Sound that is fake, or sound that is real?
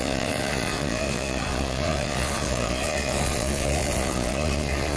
fake